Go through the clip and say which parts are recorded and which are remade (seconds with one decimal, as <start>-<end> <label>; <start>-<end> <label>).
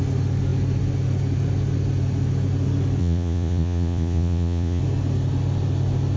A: 0.0-3.0 recorded; 3.0-4.8 remade; 4.8-6.2 recorded